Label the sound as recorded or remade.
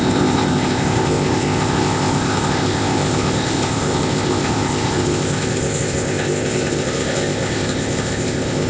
remade